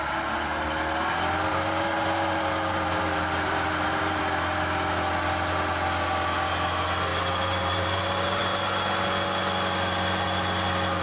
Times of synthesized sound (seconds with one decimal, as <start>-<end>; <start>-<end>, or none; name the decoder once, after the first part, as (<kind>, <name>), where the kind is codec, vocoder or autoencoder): 1.5-4.2 (vocoder, BigVGAN v2); 7.1-8.4